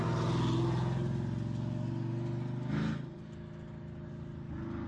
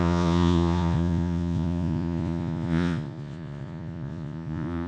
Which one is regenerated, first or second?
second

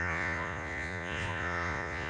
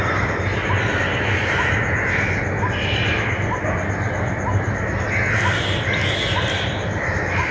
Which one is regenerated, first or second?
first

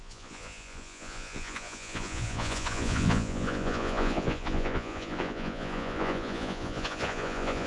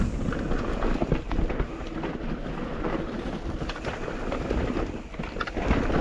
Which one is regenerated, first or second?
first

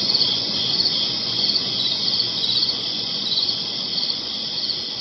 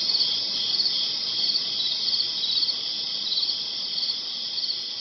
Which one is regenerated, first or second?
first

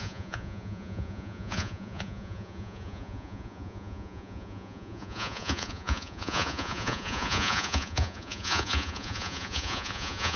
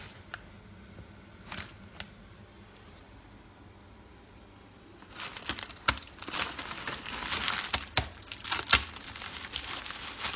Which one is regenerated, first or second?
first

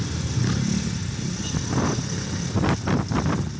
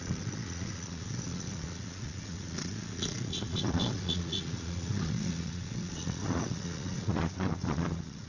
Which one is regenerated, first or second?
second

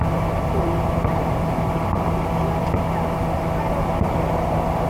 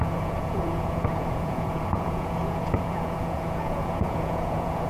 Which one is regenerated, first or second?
second